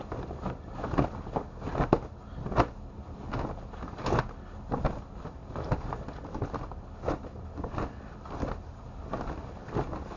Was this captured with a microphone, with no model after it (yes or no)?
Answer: yes